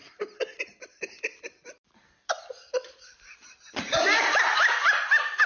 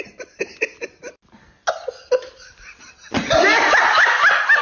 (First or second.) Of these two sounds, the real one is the second